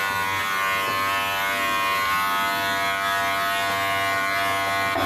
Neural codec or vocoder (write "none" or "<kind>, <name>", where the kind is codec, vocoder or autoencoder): none